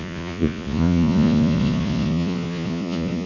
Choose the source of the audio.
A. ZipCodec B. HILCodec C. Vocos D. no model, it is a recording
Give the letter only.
C